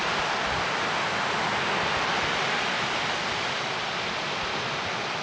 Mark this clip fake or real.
real